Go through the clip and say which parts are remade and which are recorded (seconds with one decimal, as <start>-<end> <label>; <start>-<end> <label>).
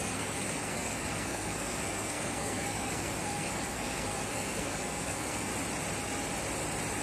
0.0-5.5 remade; 5.5-7.0 recorded